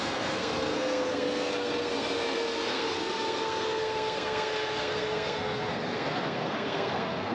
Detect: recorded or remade remade